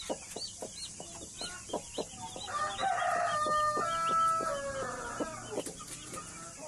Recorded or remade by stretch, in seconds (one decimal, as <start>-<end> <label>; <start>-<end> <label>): 0.0-6.7 recorded